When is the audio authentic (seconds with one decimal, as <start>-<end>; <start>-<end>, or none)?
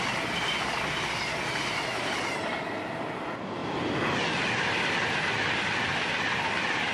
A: 0.0-3.6; 4.1-6.9